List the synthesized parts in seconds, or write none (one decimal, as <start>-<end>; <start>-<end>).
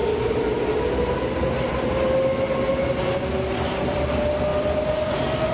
none